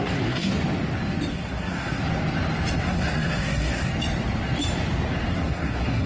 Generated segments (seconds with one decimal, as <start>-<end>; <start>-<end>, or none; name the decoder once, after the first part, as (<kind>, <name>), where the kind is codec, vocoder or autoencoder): 0.0-0.5 (codec, SNAC); 1.3-2.0; 2.8-3.9; 5.3-6.1